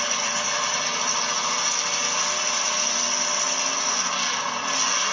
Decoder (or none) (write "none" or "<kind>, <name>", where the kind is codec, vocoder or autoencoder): none